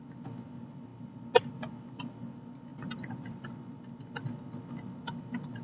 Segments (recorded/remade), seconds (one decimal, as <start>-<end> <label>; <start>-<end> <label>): 0.0-2.7 recorded; 2.7-3.5 remade; 3.5-5.6 recorded